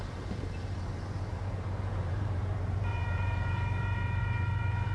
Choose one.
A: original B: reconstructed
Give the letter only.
B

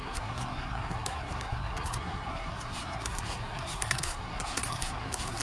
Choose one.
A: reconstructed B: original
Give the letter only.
A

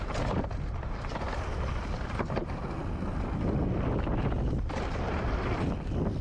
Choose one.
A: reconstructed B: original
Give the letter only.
A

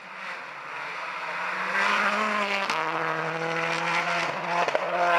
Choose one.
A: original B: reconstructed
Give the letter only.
A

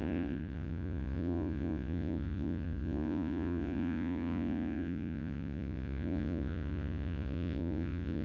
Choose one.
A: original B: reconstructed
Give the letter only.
B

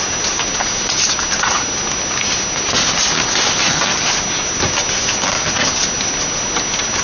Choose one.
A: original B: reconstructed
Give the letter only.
A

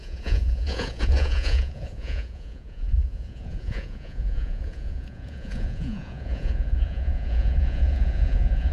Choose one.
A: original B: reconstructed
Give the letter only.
B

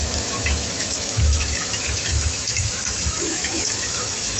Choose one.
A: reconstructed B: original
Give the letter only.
A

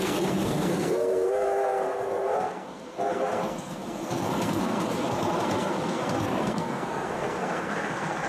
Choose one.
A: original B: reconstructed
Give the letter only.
B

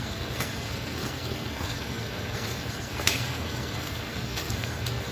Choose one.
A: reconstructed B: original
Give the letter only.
A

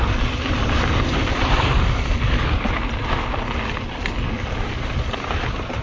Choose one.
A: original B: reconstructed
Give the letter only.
A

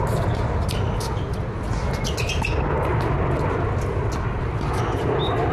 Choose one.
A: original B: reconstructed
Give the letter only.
A